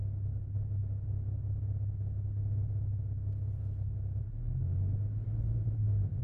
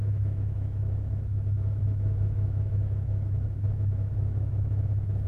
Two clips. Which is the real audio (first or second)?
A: first